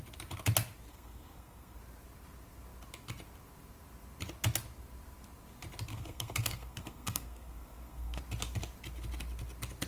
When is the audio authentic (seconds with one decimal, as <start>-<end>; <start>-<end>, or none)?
0.0-0.9; 1.8-5.9; 8.2-9.9